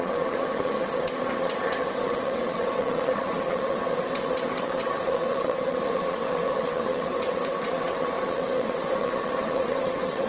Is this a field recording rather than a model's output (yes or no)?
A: no